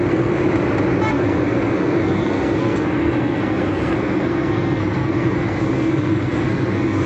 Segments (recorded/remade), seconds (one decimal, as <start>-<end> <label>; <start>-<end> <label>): 0.0-0.4 remade; 0.4-1.1 recorded; 1.1-7.1 remade